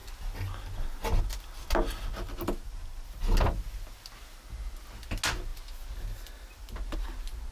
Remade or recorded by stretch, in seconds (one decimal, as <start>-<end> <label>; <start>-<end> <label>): 0.0-7.5 recorded